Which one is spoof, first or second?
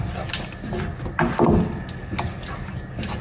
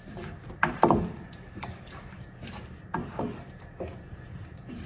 second